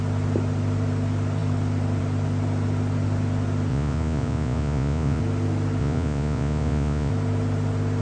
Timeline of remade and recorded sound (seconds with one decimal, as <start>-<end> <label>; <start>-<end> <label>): 0.0-3.7 recorded; 3.7-5.2 remade; 5.2-5.8 recorded; 5.8-7.1 remade; 7.1-8.0 recorded